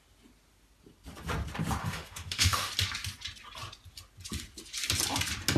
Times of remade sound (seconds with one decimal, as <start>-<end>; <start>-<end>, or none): 1.8-2.7